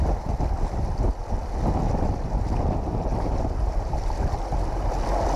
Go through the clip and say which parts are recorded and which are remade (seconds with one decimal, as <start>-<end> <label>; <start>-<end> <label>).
0.0-3.1 recorded; 3.1-4.2 remade; 4.2-5.4 recorded